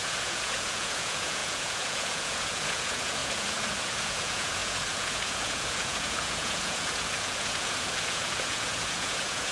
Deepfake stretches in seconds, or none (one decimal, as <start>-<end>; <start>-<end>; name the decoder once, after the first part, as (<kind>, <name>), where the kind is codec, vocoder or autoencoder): 0.0-9.5 (vocoder, Vocos)